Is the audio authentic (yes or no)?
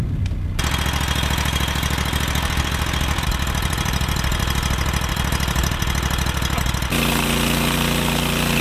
yes